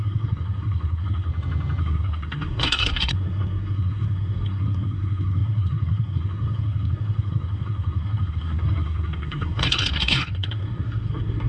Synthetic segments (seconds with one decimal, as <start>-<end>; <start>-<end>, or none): 0.0-1.3; 1.8-11.5